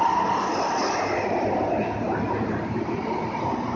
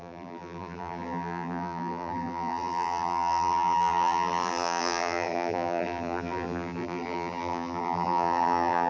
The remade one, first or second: second